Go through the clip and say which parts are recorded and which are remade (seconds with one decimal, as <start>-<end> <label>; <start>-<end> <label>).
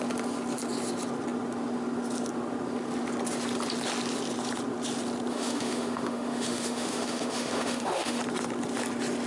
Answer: 0.0-5.3 recorded; 5.3-8.2 remade; 8.2-9.3 recorded